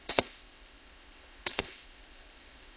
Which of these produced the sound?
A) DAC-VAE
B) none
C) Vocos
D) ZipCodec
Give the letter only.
D